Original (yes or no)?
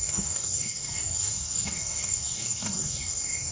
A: no